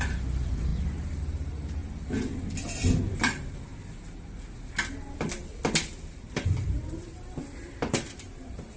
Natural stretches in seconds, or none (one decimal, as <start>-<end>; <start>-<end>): 1.8-3.1; 3.7-6.6